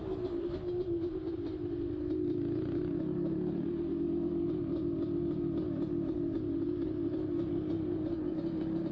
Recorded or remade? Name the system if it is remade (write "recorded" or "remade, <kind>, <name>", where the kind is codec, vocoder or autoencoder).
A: recorded